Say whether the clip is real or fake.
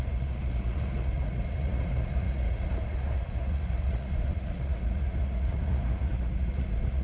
fake